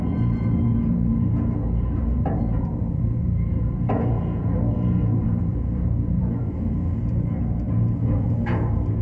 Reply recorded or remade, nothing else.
remade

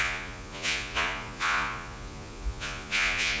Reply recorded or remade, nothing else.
remade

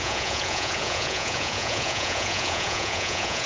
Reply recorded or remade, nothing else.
remade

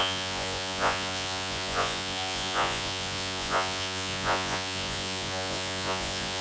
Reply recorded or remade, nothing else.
remade